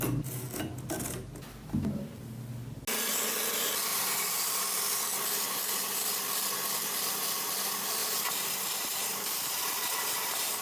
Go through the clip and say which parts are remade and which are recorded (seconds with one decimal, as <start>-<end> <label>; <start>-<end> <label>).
0.0-3.9 recorded; 3.9-4.6 remade; 4.6-8.0 recorded; 8.0-10.6 remade